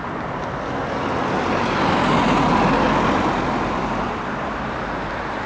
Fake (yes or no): no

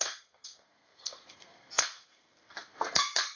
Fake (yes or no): yes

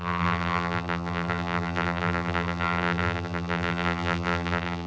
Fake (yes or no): yes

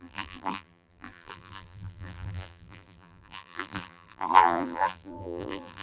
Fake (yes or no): yes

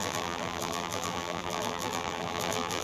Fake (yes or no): yes